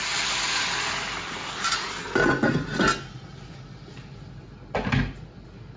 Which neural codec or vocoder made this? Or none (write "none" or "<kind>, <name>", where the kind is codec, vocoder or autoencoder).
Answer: none